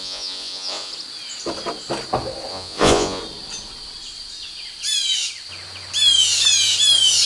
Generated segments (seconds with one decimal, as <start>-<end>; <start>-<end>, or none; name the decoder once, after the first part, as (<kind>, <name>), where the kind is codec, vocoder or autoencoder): 0.0-0.9 (vocoder, Vocos); 2.5-3.2